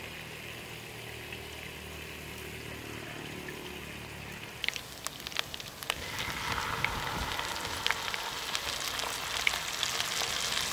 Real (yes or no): yes